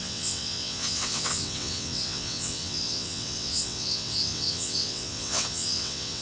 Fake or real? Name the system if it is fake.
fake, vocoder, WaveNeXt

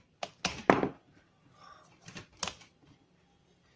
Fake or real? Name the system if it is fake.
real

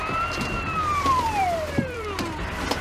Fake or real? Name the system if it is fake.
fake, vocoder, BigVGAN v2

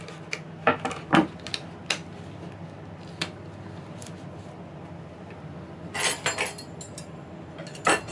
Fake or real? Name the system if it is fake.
real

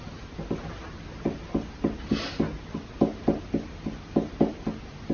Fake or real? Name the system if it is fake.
real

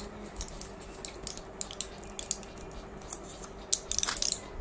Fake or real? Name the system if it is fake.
real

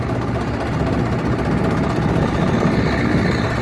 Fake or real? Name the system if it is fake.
real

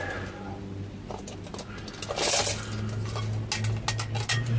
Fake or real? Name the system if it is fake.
real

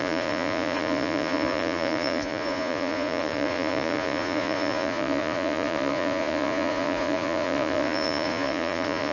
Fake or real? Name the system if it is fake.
fake, vocoder, Vocos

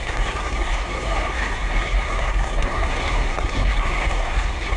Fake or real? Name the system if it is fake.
fake, codec, SNAC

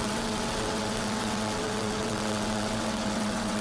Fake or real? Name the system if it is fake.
fake, vocoder, WaveNeXt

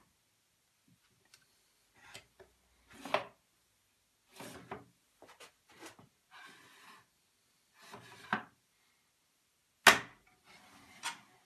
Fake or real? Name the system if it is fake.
real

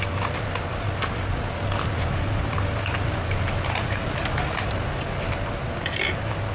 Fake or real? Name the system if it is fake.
real